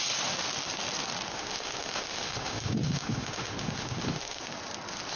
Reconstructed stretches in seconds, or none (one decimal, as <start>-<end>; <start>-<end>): 1.3-4.4